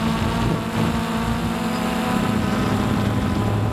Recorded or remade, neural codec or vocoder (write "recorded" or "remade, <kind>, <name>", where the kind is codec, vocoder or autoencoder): recorded